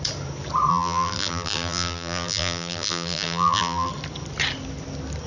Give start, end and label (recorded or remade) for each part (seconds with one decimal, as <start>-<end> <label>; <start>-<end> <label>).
0.0-0.7 recorded; 0.7-3.9 remade; 3.9-5.3 recorded